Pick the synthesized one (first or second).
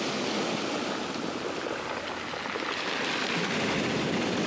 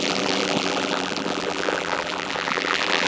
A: second